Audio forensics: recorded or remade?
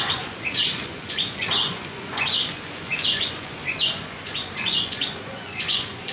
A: remade